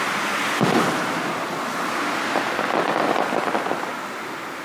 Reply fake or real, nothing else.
real